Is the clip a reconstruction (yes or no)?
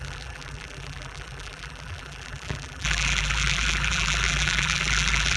yes